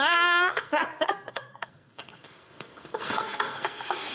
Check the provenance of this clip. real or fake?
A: fake